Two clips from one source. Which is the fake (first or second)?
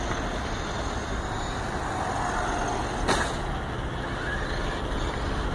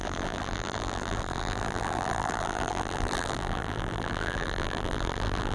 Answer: second